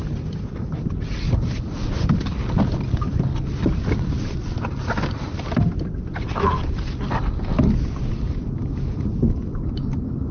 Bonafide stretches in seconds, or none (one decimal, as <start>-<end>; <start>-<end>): 0.0-10.3